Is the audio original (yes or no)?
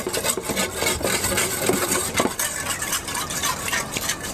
yes